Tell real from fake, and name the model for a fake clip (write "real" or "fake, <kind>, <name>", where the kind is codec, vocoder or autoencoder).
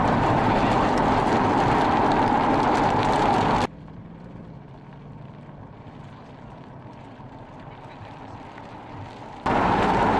fake, vocoder, BigVGAN v2